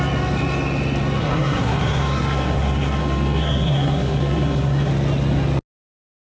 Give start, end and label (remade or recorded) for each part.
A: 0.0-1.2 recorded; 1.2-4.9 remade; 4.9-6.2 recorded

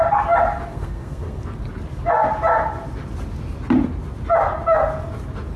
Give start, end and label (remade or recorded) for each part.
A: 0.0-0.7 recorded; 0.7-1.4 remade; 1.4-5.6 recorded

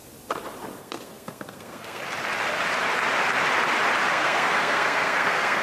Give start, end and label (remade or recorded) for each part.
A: 0.0-0.8 recorded; 0.8-2.0 remade; 2.0-4.1 recorded; 4.1-5.6 remade

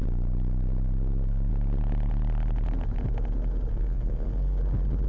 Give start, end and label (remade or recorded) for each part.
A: 0.0-3.7 recorded; 3.7-4.6 remade; 4.6-5.1 recorded

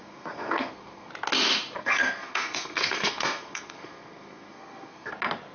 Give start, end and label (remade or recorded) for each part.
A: 0.0-1.1 remade; 1.1-1.8 recorded; 1.8-5.1 remade; 5.1-5.5 recorded

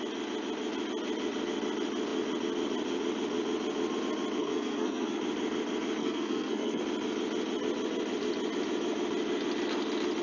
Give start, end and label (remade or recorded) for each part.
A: 0.0-4.4 recorded; 4.4-5.2 remade; 5.2-6.0 recorded; 6.0-6.8 remade; 6.8-10.2 recorded

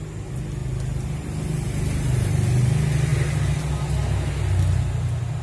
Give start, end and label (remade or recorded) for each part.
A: 0.0-5.4 recorded

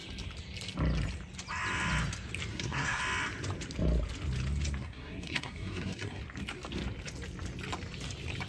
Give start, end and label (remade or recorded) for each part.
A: 0.0-2.5 recorded; 2.5-3.0 remade; 3.0-4.8 recorded; 4.8-6.2 remade; 6.2-8.5 recorded